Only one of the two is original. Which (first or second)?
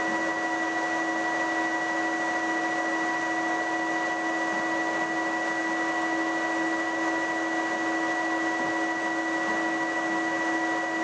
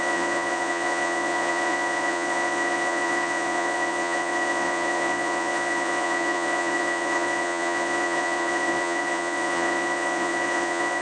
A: first